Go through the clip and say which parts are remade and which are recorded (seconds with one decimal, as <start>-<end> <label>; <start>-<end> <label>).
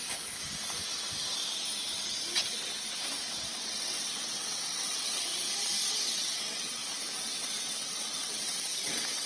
0.0-1.0 recorded; 1.0-1.4 remade; 1.4-3.5 recorded; 3.5-5.3 remade; 5.3-5.9 recorded; 5.9-6.8 remade; 6.8-7.4 recorded; 7.4-9.3 remade